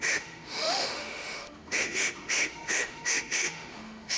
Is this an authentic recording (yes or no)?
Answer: no